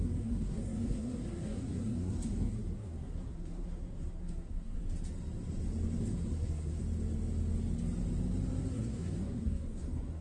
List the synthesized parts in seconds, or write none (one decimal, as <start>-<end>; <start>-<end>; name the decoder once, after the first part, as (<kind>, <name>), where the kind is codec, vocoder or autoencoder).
0.0-4.8 (codec, SNAC); 6.0-6.8; 8.7-10.2